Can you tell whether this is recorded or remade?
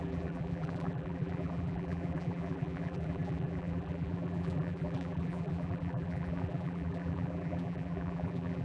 remade